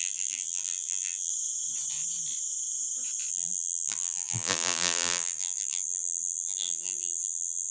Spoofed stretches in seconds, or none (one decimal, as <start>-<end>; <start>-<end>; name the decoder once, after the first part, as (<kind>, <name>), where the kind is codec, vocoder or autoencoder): 0.0-1.3 (vocoder, BigVGAN v2); 3.3-7.7

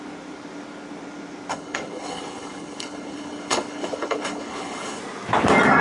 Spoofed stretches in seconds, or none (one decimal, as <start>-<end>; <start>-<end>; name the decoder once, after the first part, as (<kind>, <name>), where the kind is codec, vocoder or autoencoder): 1.5-5.0 (codec, HILCodec)

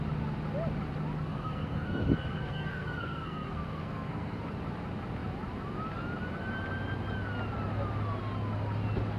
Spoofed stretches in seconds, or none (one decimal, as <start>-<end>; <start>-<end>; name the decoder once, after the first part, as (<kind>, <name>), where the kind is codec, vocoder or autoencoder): 1.3-4.4 (codec, SNAC)

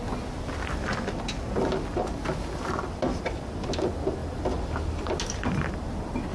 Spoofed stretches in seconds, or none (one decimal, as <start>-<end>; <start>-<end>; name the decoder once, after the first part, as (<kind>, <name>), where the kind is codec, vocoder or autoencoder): none

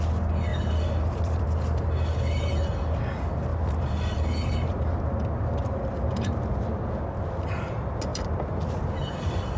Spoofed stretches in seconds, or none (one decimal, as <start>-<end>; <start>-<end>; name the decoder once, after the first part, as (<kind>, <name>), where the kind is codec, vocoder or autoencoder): 0.5-1.8 (vocoder, BigVGAN v2); 3.5-5.0; 8.1-8.7

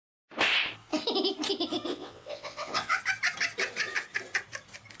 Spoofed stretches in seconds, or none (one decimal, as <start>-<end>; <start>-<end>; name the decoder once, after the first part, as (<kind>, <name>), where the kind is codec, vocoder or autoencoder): 1.9-3.0 (vocoder, WaveNeXt)

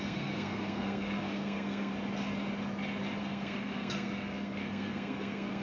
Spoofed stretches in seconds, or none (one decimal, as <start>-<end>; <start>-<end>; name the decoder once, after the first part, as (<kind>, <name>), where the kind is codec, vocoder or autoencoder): 0.0-1.9 (codec, SNAC); 3.2-5.6